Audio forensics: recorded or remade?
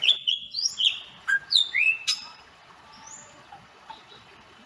remade